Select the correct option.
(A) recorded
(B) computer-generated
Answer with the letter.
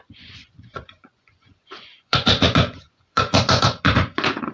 B